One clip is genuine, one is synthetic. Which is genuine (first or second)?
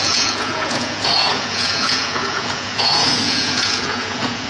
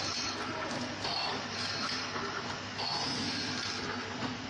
second